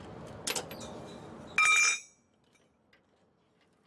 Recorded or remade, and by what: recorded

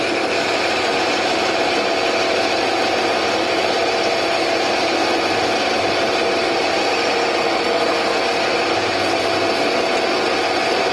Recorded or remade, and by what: recorded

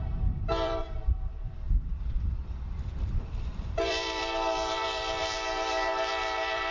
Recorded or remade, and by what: remade, vocoder, BigVGAN v2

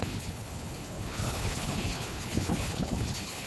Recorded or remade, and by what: remade, codec, HILCodec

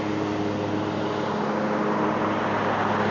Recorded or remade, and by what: recorded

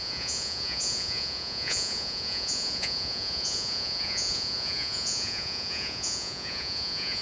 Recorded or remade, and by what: remade, vocoder, Vocos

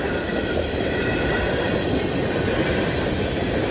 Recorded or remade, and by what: recorded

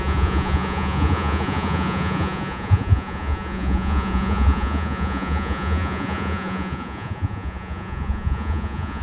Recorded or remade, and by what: remade, vocoder, Vocos